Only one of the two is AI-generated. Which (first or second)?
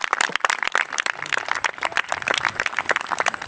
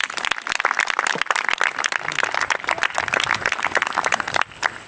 first